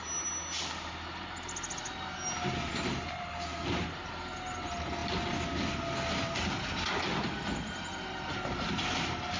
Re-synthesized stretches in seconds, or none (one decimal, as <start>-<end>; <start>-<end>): none